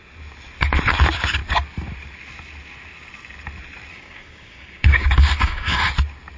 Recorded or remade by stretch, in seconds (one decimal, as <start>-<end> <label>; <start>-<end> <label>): 0.0-3.9 recorded; 3.9-5.9 remade; 5.9-6.4 recorded